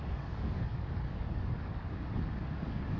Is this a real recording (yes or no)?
no